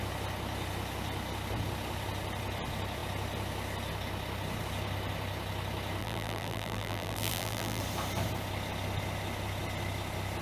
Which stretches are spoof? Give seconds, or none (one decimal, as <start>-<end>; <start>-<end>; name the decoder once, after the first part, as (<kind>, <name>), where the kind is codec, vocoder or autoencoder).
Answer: 6.0-7.8 (vocoder, BigVGAN v2)